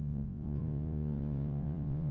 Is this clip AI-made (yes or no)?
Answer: yes